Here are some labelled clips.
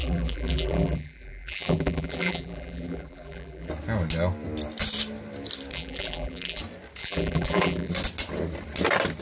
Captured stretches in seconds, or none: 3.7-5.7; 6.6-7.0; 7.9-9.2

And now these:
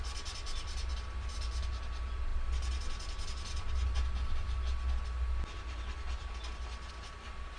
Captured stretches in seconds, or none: 0.0-7.6